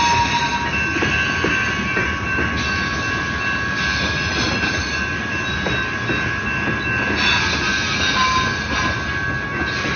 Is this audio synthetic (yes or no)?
no